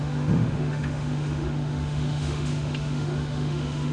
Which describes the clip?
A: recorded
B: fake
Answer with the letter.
B